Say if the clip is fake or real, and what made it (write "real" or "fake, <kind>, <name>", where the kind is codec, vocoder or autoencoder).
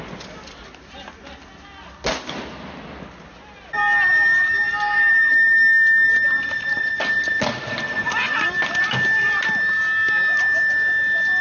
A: real